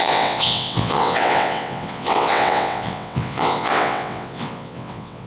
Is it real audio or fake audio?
fake